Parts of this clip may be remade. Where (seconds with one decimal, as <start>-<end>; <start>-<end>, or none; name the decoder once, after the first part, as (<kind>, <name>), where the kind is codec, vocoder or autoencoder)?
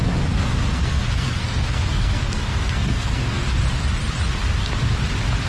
0.0-3.4 (codec, SNAC)